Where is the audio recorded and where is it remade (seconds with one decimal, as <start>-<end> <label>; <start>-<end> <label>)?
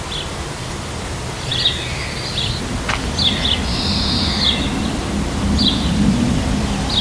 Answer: 0.0-7.0 recorded